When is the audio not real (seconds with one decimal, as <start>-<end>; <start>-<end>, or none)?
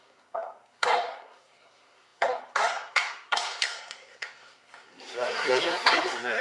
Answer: 0.0-6.4